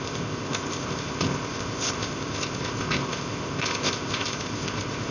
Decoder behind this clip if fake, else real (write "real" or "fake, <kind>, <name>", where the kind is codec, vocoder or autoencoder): fake, codec, ZipCodec